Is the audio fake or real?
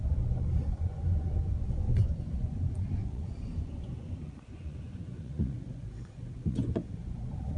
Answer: fake